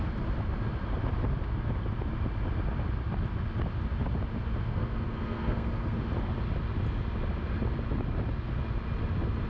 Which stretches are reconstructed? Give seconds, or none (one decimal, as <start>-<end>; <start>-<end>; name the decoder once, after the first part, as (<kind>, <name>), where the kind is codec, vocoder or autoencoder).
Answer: 4.7-6.0 (codec, SNAC)